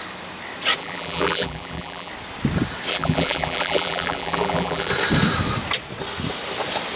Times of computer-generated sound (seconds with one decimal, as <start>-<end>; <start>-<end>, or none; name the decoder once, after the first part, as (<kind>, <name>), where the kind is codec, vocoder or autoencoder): 0.8-2.1 (vocoder, BigVGAN v2); 2.9-4.9